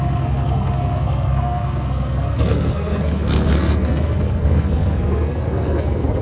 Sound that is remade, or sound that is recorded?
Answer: remade